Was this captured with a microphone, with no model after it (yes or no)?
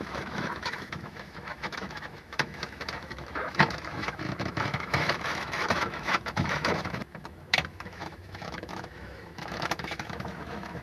no